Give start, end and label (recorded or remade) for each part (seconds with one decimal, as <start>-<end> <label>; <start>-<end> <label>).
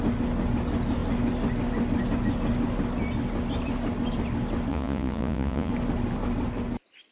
0.0-4.7 recorded; 4.7-5.7 remade; 5.7-7.1 recorded